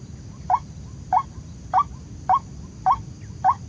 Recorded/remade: recorded